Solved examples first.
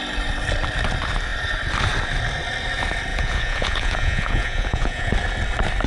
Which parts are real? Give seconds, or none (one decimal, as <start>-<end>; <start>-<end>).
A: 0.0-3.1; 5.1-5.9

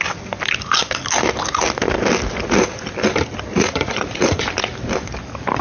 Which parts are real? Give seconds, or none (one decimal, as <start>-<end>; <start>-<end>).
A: 0.0-3.5; 4.4-5.6

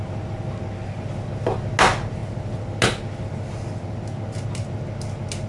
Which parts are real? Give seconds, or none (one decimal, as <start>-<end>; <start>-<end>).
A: 0.0-5.5

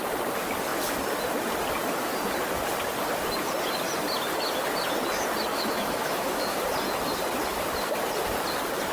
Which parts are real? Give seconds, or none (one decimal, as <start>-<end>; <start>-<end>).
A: 0.0-5.5; 6.6-8.9

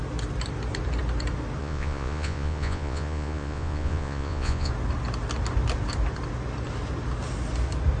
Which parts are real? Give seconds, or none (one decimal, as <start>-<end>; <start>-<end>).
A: 0.0-1.6; 4.7-8.0

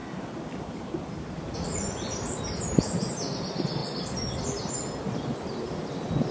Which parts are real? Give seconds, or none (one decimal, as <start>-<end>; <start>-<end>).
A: 0.0-6.3

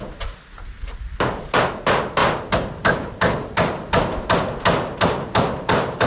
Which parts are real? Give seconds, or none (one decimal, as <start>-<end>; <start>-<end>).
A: 0.0-6.1